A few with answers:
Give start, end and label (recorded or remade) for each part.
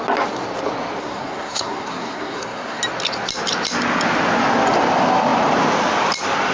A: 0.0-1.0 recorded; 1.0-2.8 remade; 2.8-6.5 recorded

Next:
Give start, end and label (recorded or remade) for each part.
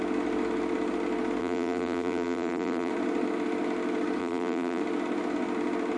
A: 0.0-1.4 recorded; 1.4-2.9 remade; 2.9-4.2 recorded; 4.2-4.8 remade; 4.8-6.0 recorded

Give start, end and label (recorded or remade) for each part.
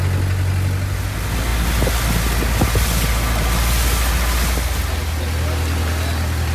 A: 0.0-6.5 recorded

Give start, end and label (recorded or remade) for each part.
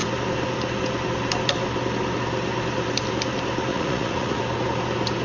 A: 0.0-3.7 recorded; 3.7-4.4 remade; 4.4-5.2 recorded